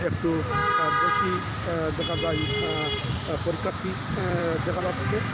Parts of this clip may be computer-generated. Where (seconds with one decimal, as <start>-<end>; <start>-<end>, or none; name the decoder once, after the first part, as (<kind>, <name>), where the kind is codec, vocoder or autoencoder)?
2.4-4.8 (vocoder, BigVGAN v2)